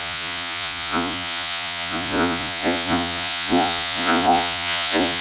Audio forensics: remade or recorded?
remade